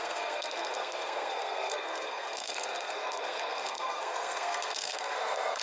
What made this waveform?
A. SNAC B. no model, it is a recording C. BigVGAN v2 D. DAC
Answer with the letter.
A